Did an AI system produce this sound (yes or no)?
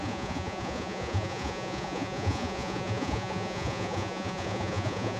yes